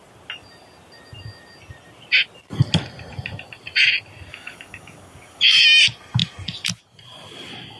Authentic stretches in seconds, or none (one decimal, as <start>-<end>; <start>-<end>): 0.0-4.3; 5.6-7.8